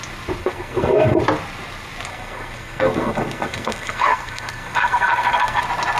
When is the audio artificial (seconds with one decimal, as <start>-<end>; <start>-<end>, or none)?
0.4-1.2; 2.1-5.6